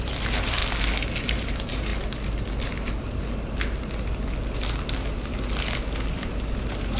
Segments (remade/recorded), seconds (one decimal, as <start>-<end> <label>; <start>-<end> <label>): 0.0-0.6 remade; 0.6-1.2 recorded; 1.2-1.9 remade; 1.9-6.1 recorded; 6.1-7.0 remade